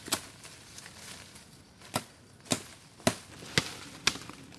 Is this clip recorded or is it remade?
recorded